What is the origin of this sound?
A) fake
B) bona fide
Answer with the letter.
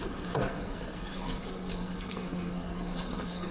A